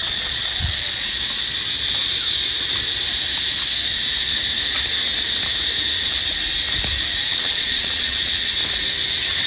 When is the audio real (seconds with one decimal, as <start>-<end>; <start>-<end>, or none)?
1.1-7.3; 8.5-9.5